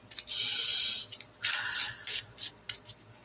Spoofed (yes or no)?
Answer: no